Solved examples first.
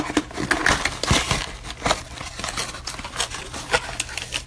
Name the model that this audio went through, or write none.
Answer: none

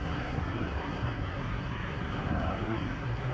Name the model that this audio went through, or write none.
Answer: codec, SNAC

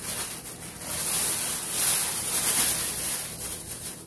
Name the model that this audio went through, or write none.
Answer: none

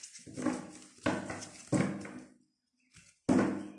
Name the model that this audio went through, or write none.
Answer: none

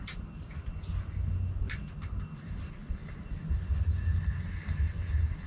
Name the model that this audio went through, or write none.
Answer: none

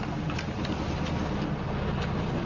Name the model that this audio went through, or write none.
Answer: none